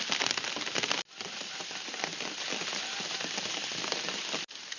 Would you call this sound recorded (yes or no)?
yes